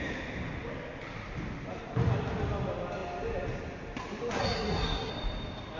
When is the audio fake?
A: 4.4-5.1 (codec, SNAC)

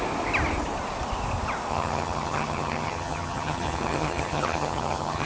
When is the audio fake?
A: 1.7-5.3 (vocoder, HiFi-GAN)

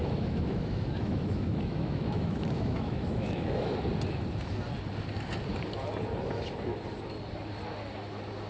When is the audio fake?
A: 0.0-3.7 (autoencoder, DAC-VAE)

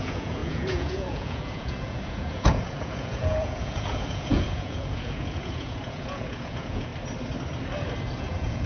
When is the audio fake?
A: 0.0-6.9 (vocoder, Vocos); 8.2-8.7